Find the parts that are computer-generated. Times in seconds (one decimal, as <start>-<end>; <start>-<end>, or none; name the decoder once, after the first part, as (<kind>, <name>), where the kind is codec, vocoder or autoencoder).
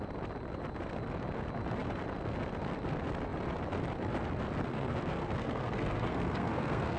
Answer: 4.7-7.0 (codec, SNAC)